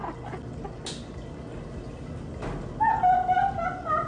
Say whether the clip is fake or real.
real